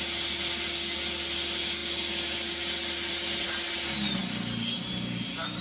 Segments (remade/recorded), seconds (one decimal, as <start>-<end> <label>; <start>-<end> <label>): 0.0-5.6 recorded